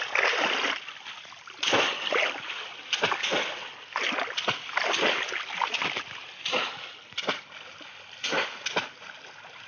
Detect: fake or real real